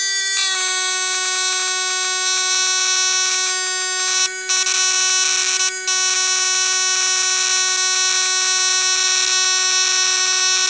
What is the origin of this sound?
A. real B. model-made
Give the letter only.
A